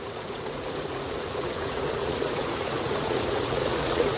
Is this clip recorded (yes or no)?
no